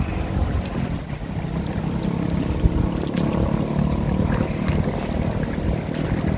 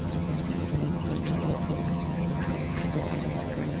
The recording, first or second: first